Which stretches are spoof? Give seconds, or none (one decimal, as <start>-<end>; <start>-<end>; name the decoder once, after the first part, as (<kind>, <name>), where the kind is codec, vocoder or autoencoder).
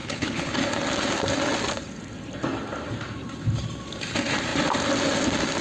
0.0-0.6 (codec, HILCodec)